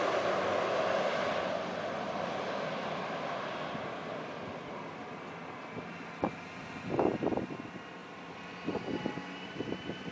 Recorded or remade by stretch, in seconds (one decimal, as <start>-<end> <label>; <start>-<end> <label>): 0.0-10.1 recorded